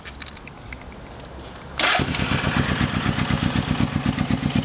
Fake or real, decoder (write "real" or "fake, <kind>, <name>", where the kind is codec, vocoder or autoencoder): real